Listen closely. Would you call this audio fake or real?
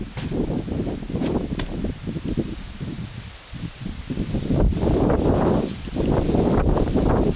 real